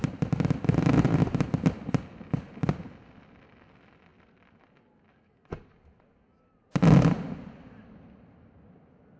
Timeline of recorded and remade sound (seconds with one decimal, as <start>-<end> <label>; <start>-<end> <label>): 0.0-9.2 recorded

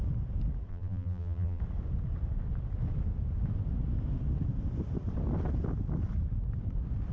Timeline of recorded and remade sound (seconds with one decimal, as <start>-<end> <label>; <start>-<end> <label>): 0.0-0.7 recorded; 0.7-1.6 remade; 1.6-7.1 recorded

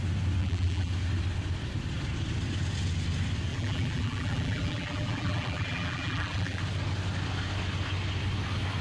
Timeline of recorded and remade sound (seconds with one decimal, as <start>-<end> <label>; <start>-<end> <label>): 0.0-0.4 recorded; 0.4-0.9 remade; 0.9-3.5 recorded; 3.5-6.6 remade; 6.6-8.8 recorded

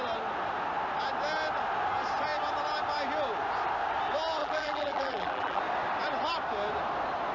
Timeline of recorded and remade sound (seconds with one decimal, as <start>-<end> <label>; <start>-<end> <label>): 0.0-4.4 recorded; 4.4-5.6 remade; 5.6-7.3 recorded

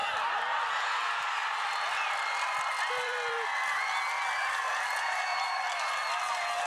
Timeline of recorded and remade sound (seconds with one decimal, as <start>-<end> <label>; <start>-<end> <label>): 0.0-3.7 remade; 3.7-5.3 recorded; 5.3-5.9 remade; 5.9-6.7 recorded

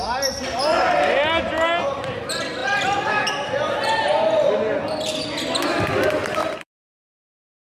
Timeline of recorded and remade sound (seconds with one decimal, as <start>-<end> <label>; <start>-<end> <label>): 0.0-2.6 recorded; 2.6-3.8 remade; 3.8-6.4 recorded; 6.4-7.7 remade

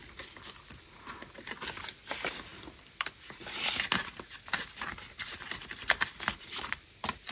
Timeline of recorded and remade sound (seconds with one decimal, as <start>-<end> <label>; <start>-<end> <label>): 0.0-1.2 remade; 1.2-2.5 recorded; 2.5-7.3 remade

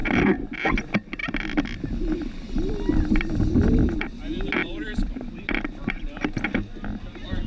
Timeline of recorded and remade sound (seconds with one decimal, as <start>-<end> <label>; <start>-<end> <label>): 0.0-1.2 recorded; 1.2-2.7 remade; 2.7-4.6 recorded; 4.6-5.6 remade; 5.6-7.5 recorded